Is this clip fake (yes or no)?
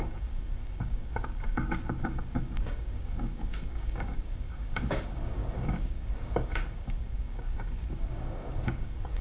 yes